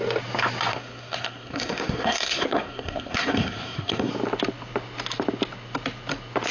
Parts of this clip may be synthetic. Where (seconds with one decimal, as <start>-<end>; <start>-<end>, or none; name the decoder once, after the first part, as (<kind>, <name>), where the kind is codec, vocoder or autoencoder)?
0.7-4.1 (codec, SNAC)